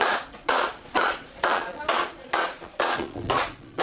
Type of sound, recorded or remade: remade